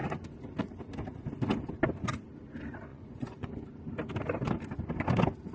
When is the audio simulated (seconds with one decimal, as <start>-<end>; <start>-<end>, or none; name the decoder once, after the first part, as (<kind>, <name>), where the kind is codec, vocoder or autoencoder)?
2.9-3.5 (vocoder, Vocos)